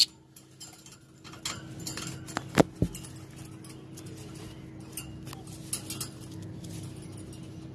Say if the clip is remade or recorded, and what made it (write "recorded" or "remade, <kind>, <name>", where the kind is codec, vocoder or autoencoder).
recorded